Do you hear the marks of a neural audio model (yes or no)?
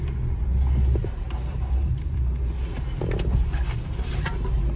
no